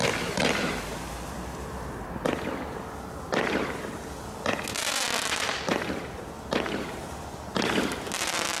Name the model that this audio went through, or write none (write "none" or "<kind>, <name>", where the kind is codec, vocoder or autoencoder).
none